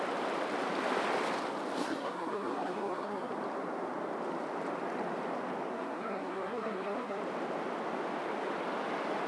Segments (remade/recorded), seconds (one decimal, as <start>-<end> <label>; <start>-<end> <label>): 0.0-1.8 recorded; 1.8-3.3 remade; 3.3-5.7 recorded; 5.7-7.2 remade; 7.2-9.3 recorded